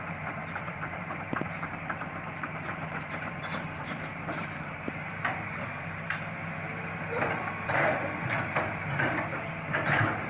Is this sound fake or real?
fake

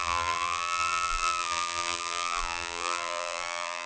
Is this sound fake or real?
fake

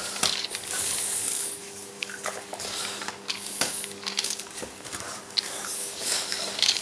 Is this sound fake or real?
fake